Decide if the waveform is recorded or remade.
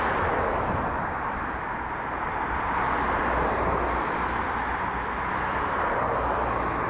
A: recorded